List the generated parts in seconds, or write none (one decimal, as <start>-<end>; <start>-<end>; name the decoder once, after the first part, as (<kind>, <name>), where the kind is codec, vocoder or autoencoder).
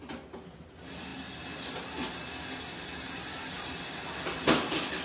none